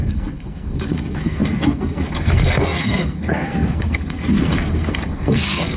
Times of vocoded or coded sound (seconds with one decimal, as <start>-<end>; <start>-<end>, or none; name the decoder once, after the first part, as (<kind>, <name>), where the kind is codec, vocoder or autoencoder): 0.0-5.8 (codec, SNAC)